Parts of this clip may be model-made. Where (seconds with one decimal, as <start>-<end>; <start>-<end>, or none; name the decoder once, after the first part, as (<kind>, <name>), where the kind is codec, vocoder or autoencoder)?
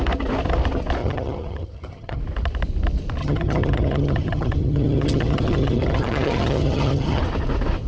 1.0-2.2 (vocoder, HiFi-GAN); 3.2-7.2